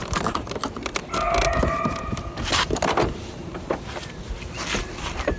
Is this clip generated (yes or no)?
no